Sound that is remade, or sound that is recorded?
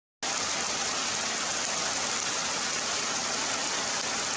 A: recorded